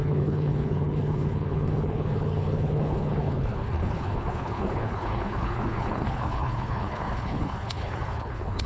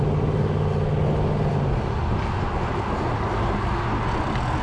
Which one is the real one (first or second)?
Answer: second